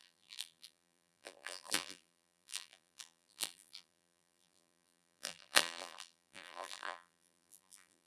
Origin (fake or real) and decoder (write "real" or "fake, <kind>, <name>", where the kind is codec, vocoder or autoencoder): fake, vocoder, BigVGAN v2